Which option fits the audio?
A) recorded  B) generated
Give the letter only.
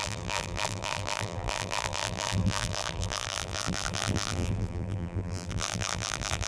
B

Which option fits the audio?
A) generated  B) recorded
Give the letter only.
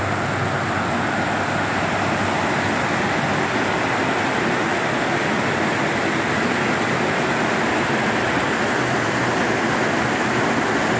B